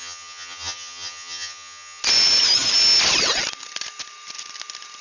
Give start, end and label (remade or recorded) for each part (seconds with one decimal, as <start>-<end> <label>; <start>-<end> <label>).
0.0-2.0 remade; 2.0-5.0 recorded